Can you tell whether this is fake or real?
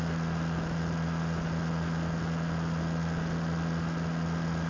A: real